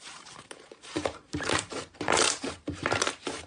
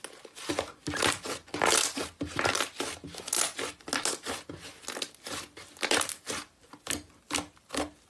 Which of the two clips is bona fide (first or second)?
second